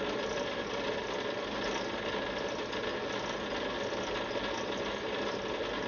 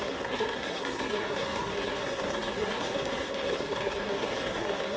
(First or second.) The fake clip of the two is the second